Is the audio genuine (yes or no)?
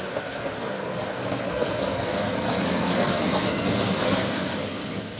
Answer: no